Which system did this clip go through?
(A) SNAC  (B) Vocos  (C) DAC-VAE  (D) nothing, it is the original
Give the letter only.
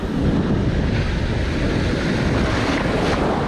D